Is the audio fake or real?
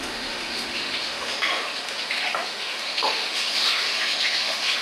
fake